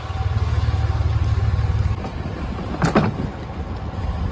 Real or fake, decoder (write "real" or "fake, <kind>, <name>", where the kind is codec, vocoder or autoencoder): real